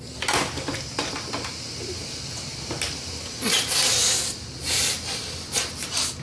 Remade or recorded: recorded